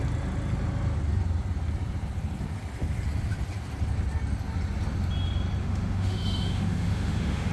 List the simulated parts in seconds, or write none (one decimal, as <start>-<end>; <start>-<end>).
5.6-7.5